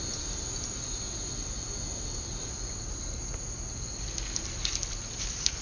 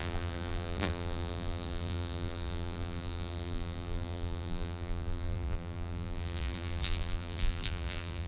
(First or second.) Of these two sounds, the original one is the first